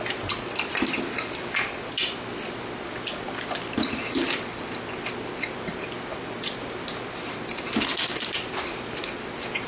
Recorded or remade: recorded